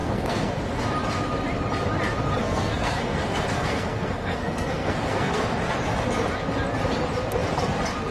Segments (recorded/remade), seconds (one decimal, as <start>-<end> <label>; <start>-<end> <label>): 0.0-0.6 remade; 0.6-2.4 recorded; 2.4-5.4 remade; 5.4-8.1 recorded